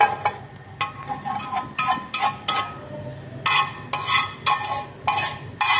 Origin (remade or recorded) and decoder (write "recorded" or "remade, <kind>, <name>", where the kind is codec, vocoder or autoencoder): recorded